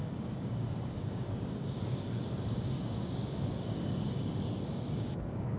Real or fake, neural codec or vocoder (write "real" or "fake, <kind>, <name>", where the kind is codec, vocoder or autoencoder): fake, codec, DAC